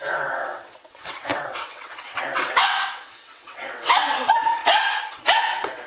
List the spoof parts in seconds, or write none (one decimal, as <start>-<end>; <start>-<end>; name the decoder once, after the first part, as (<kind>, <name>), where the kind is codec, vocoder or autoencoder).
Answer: 0.0-4.6 (vocoder, WaveNeXt); 5.1-5.9